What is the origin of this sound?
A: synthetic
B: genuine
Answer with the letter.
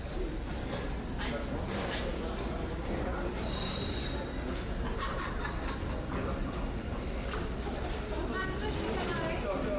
B